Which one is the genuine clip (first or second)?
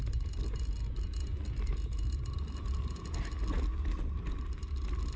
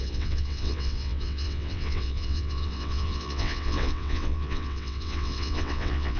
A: first